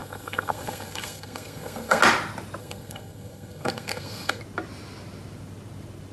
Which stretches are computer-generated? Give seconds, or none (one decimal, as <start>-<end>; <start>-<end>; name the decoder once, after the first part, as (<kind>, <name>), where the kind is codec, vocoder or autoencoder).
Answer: 0.0-2.0 (codec, SNAC); 2.6-4.4